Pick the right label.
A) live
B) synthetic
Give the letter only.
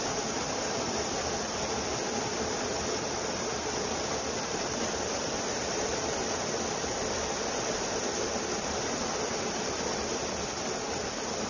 B